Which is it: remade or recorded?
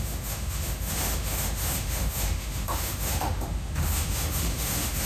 remade